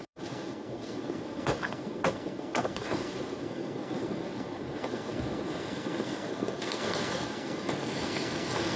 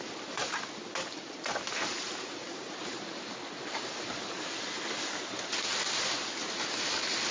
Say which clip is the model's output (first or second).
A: first